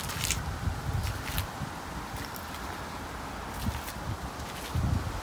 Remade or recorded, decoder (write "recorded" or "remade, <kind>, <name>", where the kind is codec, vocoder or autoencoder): recorded